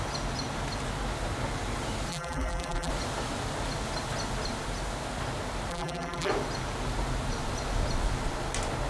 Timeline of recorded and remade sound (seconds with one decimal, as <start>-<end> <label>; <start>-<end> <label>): 0.0-2.1 recorded; 2.1-2.9 remade; 2.9-5.7 recorded; 5.7-6.3 remade; 6.3-8.9 recorded